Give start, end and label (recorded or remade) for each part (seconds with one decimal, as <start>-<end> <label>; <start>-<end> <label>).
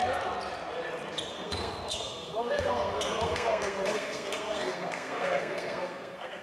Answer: 0.0-1.3 recorded; 1.3-6.4 remade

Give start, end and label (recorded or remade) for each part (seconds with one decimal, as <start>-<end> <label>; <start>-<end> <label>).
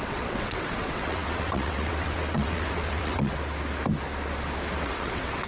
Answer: 0.0-3.4 remade; 3.4-4.8 recorded; 4.8-5.5 remade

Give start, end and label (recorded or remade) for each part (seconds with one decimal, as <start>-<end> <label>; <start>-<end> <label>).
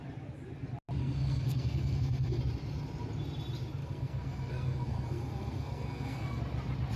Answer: 0.0-1.0 recorded; 1.0-2.4 remade; 2.4-3.8 recorded; 3.8-6.4 remade; 6.4-7.0 recorded